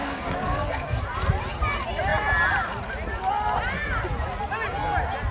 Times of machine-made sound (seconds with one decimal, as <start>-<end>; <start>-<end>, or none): 0.0-1.0